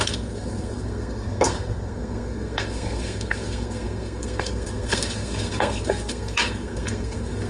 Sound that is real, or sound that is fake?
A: fake